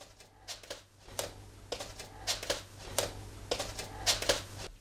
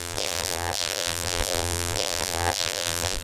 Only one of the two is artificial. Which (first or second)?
second